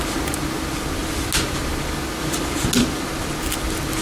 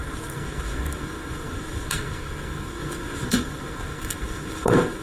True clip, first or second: first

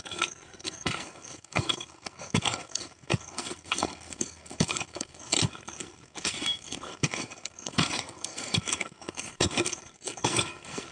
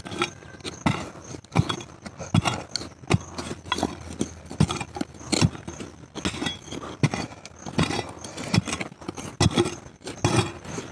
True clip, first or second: second